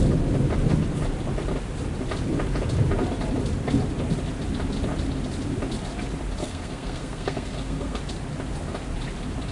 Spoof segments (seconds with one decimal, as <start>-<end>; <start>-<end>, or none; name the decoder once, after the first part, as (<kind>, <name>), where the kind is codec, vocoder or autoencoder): 6.4-8.0 (codec, SNAC)